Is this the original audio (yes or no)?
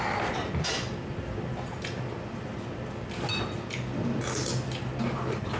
yes